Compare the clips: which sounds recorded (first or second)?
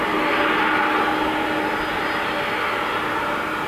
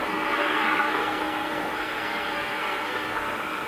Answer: first